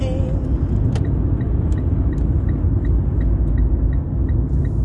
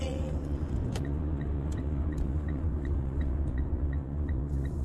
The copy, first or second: second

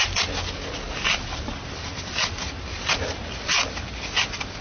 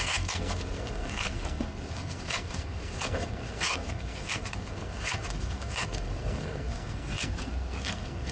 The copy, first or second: second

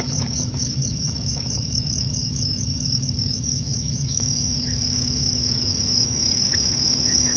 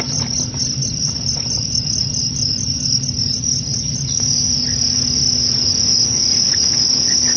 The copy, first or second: first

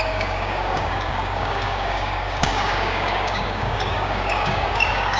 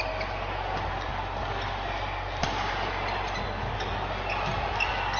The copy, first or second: first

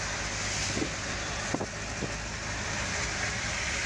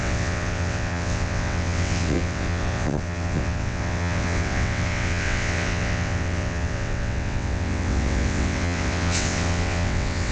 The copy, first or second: second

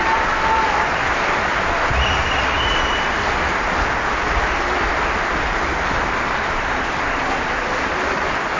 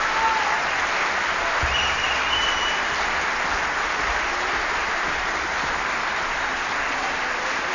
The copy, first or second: first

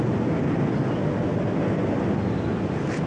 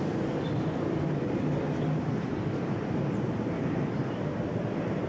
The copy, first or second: second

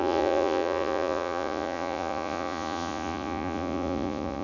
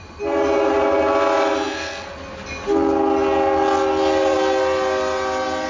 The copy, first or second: first